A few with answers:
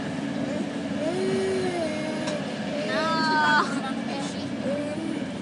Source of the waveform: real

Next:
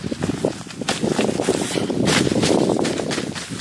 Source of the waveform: real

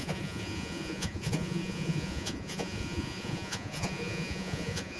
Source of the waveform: fake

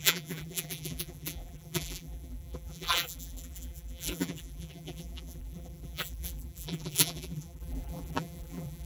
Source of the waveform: fake